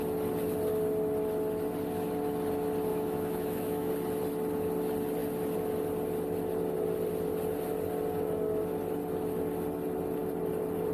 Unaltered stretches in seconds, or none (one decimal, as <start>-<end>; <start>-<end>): 0.0-2.9; 3.9-10.9